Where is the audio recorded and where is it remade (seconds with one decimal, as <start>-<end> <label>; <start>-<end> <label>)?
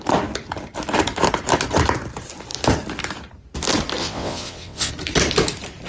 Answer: 0.0-4.0 recorded; 4.0-4.9 remade; 4.9-5.9 recorded